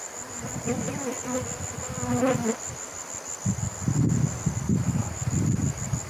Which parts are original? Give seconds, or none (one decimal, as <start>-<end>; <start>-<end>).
0.8-4.5; 5.0-6.1